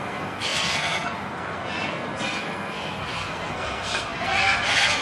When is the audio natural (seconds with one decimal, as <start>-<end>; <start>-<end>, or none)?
none